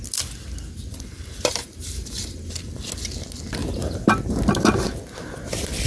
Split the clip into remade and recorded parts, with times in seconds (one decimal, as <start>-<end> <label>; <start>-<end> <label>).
0.0-0.9 recorded; 0.9-2.8 remade; 2.8-3.6 recorded; 3.6-4.4 remade; 4.4-5.9 recorded